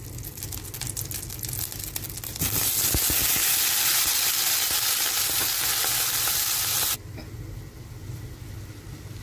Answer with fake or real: real